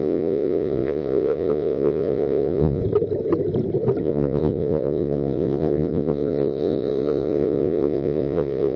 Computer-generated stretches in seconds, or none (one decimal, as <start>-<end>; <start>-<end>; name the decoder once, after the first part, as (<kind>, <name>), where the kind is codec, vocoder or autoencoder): 0.0-2.8 (vocoder, Vocos); 4.0-8.8